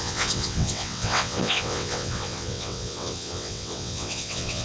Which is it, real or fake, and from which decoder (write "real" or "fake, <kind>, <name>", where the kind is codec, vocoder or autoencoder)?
fake, vocoder, WaveNeXt